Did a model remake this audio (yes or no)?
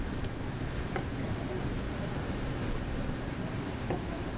yes